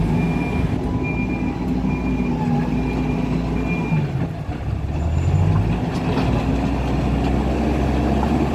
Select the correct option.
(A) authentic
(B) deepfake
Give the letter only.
A